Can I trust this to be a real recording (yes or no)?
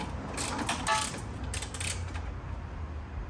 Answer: yes